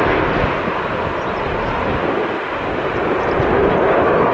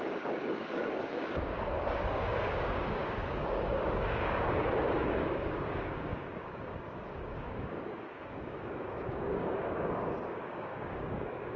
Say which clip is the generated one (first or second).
second